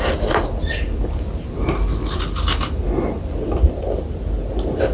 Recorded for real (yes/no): yes